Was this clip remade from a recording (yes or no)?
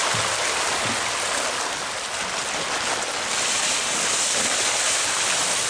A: no